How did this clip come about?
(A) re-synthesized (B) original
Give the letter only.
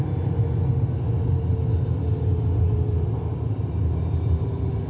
B